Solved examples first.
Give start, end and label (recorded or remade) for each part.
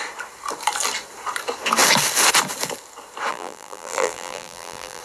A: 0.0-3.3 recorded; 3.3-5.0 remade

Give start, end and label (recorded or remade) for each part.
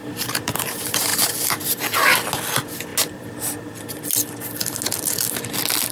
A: 0.0-0.7 remade; 0.7-5.9 recorded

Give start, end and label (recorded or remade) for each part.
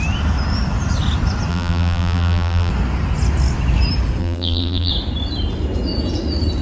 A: 0.0-1.5 recorded; 1.5-2.7 remade; 2.7-4.2 recorded; 4.2-4.9 remade; 4.9-6.6 recorded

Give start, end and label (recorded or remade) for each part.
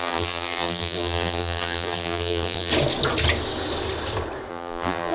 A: 0.0-2.7 remade; 2.7-4.5 recorded; 4.5-5.1 remade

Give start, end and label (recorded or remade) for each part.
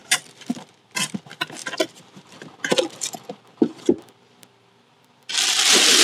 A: 0.0-1.2 remade; 1.2-1.6 recorded; 1.6-5.2 remade; 5.2-6.0 recorded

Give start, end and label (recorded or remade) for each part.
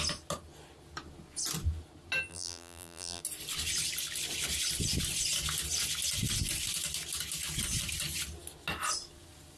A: 0.0-2.3 recorded; 2.3-3.2 remade; 3.2-9.6 recorded